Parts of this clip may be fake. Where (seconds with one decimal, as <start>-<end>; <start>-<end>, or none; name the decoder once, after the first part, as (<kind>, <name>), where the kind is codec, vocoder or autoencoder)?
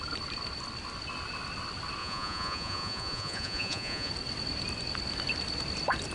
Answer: 2.0-4.1 (vocoder, Vocos)